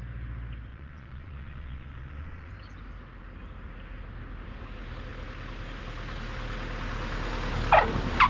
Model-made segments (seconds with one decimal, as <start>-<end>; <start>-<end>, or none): 0.7-2.5